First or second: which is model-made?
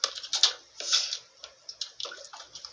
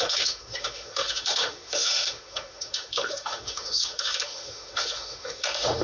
second